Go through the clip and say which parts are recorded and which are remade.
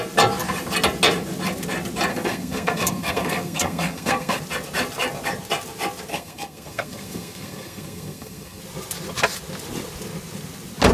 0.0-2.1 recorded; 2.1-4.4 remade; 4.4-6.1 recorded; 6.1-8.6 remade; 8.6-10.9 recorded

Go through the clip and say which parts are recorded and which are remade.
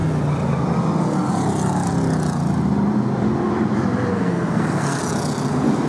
0.0-4.1 recorded; 4.1-5.0 remade; 5.0-5.9 recorded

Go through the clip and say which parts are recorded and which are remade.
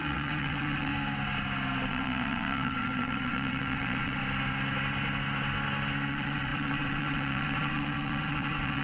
0.0-0.9 remade; 0.9-1.9 recorded; 1.9-4.2 remade; 4.2-6.1 recorded; 6.1-8.8 remade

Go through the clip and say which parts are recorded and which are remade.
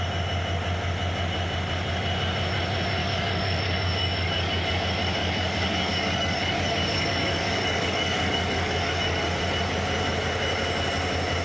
0.0-3.0 recorded; 3.0-4.8 remade; 4.8-5.2 recorded; 5.2-9.4 remade; 9.4-11.4 recorded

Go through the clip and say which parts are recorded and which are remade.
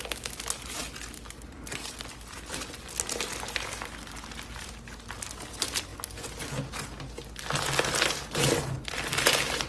0.0-9.7 recorded